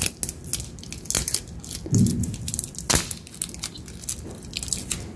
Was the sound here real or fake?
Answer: real